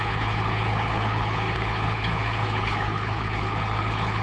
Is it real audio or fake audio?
fake